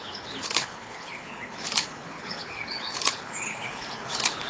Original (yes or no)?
no